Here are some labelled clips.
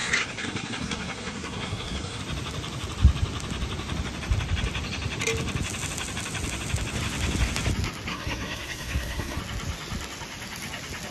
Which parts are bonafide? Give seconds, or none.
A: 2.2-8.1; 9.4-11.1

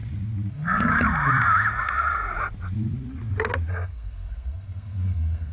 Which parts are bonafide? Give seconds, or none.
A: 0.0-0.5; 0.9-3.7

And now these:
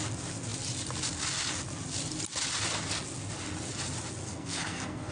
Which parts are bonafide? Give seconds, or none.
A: 0.0-4.2